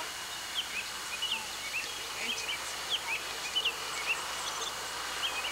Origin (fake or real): real